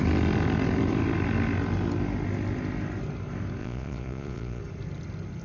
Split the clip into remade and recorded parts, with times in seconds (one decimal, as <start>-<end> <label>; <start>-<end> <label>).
0.0-3.6 recorded; 3.6-4.6 remade; 4.6-5.4 recorded